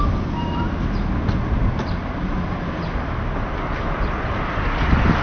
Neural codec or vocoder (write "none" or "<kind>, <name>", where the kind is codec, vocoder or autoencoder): none